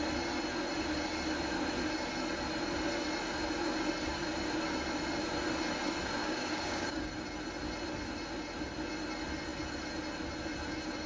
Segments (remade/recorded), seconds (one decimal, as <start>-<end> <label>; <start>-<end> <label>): 0.0-6.2 recorded; 6.2-7.1 remade; 7.1-11.1 recorded